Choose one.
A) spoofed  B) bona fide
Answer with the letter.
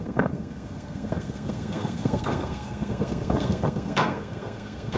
A